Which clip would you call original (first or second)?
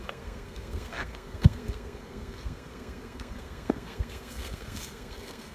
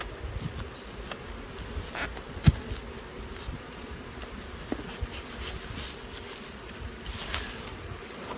second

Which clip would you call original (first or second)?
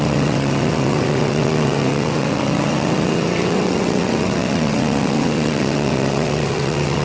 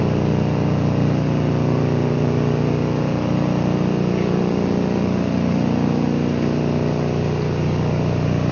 second